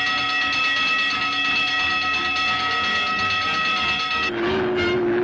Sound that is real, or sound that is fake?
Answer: real